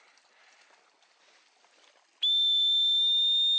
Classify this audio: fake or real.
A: real